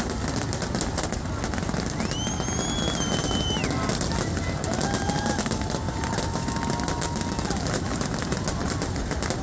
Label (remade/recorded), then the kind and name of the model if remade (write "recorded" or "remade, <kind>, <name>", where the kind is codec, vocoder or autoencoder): recorded